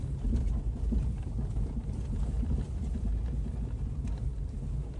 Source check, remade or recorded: recorded